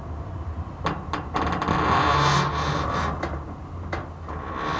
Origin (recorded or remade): recorded